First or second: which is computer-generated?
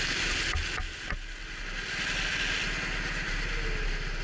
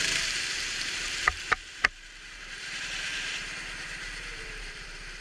second